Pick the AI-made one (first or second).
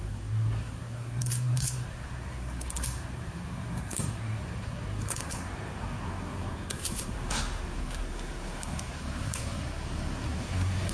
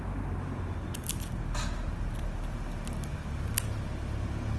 first